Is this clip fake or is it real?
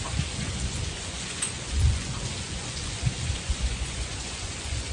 fake